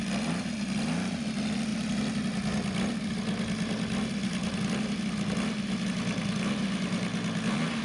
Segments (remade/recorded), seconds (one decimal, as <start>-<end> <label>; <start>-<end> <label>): 0.0-7.8 recorded